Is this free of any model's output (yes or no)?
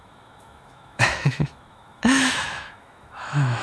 no